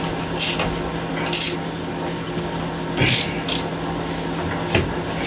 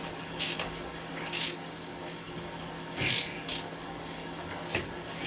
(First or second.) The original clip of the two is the first